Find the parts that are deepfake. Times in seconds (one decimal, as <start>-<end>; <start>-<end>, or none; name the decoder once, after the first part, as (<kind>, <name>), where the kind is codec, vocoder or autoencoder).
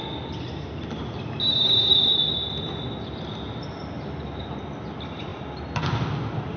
none